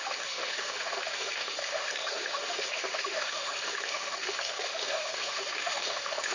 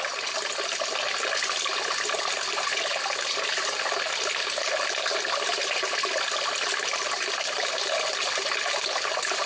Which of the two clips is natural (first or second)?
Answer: second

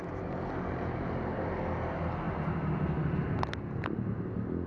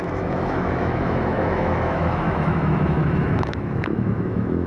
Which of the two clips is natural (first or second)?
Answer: first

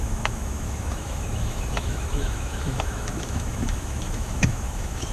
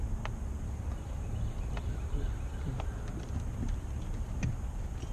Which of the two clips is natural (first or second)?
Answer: second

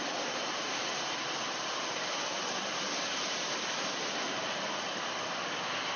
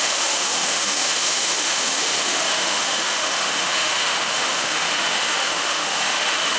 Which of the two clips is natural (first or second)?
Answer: first